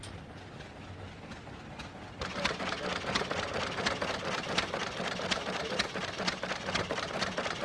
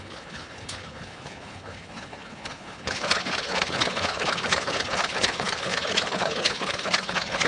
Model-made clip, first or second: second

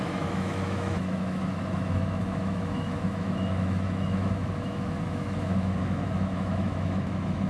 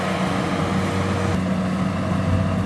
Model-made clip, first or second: first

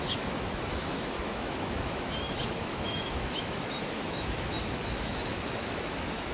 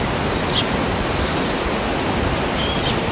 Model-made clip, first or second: first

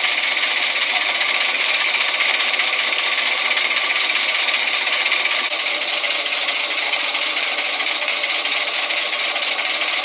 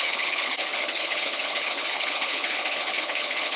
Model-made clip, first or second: second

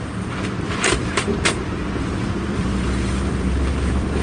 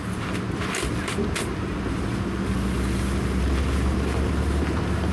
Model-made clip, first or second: first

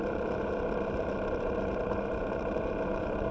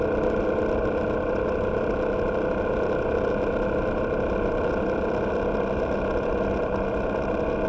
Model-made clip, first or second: first